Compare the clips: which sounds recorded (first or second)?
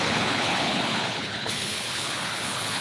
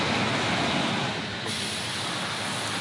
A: second